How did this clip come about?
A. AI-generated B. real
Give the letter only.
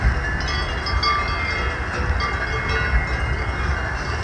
B